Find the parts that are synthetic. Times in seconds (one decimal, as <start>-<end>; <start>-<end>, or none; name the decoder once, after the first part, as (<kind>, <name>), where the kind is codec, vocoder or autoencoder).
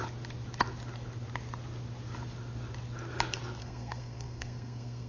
3.6-5.1 (codec, SNAC)